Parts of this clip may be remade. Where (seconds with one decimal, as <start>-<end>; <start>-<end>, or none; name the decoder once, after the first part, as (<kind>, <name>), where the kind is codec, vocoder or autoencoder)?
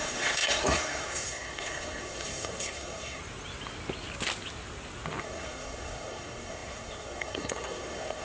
0.0-3.2 (codec, SNAC); 5.2-8.2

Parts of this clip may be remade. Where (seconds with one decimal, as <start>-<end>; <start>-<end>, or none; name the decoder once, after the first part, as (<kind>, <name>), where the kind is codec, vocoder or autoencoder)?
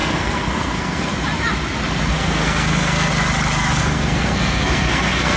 0.0-1.1 (codec, SNAC); 2.1-3.1; 3.8-5.4